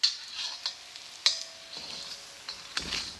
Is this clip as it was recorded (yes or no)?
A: yes